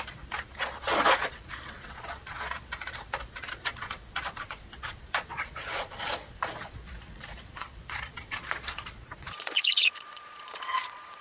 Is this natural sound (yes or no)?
no